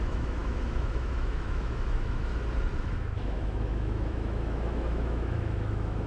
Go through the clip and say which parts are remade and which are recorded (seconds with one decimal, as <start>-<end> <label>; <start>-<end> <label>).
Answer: 0.0-2.3 remade; 2.3-2.8 recorded; 2.8-6.1 remade

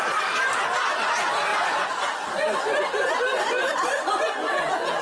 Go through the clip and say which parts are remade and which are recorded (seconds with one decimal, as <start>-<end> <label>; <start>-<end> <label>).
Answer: 0.0-5.0 recorded